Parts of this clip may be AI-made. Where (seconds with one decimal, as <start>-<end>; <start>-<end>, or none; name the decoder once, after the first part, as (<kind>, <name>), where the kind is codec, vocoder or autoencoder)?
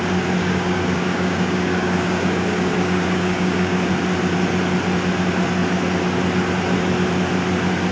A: 0.4-3.9 (codec, DAC)